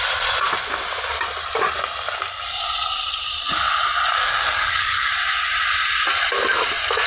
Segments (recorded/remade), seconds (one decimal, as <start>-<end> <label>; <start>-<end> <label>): 0.0-4.2 recorded; 4.2-5.1 remade; 5.1-7.1 recorded